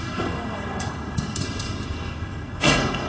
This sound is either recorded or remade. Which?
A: remade